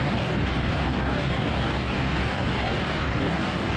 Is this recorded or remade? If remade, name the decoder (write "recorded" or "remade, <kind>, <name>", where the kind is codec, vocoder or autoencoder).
remade, codec, DAC